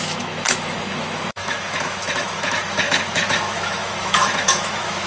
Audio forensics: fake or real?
fake